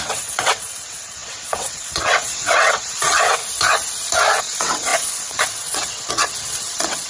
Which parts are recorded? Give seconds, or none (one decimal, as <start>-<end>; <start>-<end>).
3.4-4.4